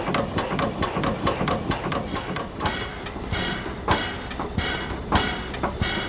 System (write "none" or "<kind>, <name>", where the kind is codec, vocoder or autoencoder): none